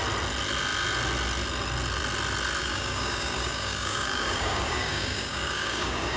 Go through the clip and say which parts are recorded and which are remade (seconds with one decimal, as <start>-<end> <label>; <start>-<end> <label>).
0.0-2.6 recorded; 2.6-6.2 remade